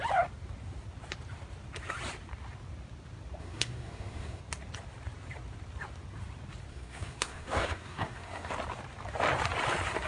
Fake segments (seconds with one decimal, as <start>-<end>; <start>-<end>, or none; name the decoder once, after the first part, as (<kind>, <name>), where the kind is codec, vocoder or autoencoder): 3.4-4.4 (codec, SNAC); 6.7-8.5